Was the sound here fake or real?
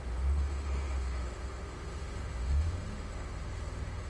fake